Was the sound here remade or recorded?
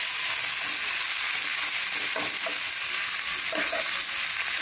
recorded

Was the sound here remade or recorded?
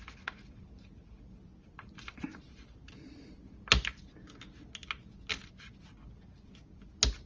recorded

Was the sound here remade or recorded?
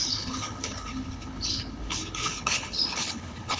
remade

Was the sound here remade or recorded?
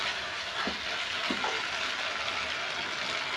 recorded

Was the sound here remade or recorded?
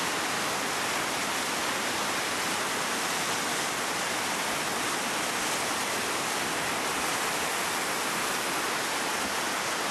recorded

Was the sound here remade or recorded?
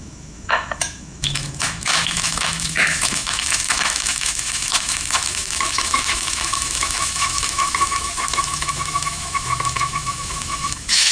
remade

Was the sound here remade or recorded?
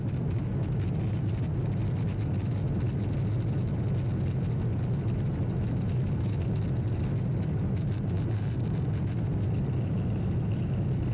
recorded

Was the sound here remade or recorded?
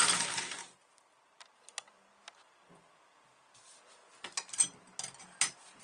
recorded